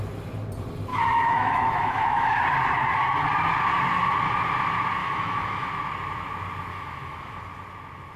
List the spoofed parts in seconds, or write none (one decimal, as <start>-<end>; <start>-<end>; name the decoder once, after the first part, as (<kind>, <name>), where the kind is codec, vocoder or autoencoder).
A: 0.9-2.4 (autoencoder, DAC-VAE); 5.0-5.7; 6.7-7.4